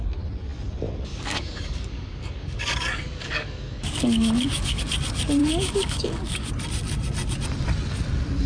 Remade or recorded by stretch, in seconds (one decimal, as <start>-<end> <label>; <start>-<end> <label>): 0.0-1.1 recorded; 1.1-4.8 remade; 4.8-5.4 recorded; 5.4-6.5 remade; 6.5-8.5 recorded